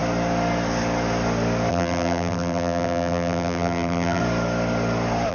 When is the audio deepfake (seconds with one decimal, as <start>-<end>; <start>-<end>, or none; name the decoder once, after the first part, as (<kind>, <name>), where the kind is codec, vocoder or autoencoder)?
1.7-4.2 (vocoder, BigVGAN v2)